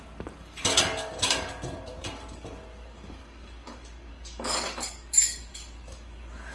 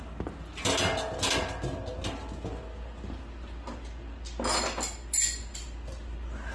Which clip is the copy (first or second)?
first